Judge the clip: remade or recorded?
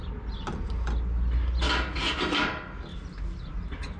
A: recorded